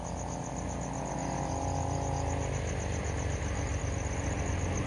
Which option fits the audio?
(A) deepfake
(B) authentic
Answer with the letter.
B